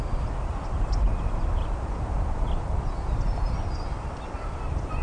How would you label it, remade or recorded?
recorded